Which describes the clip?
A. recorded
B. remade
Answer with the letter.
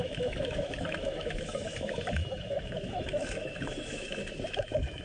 B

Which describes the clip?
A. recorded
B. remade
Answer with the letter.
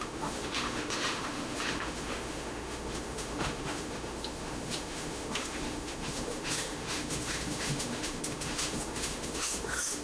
B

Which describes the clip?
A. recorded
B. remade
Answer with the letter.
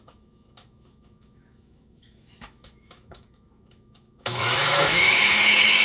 B